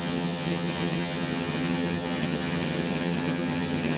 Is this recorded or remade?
remade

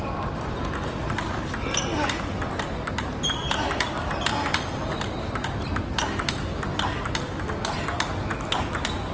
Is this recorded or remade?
recorded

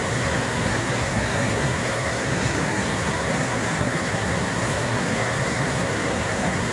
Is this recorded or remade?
remade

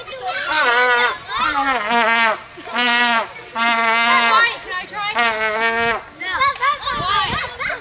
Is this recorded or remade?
recorded